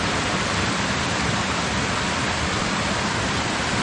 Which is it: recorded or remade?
recorded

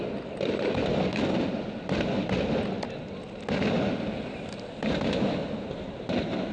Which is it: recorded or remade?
recorded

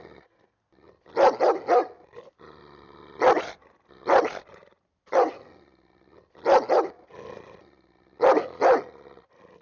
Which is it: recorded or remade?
recorded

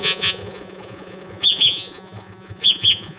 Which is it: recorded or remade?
remade